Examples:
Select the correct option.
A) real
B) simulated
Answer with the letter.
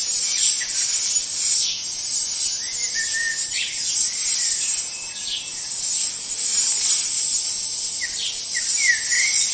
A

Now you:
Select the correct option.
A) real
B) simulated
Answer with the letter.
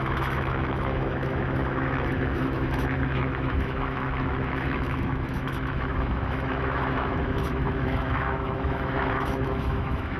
B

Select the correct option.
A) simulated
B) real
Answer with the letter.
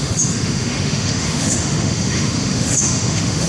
A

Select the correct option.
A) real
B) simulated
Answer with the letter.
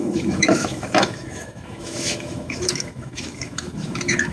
B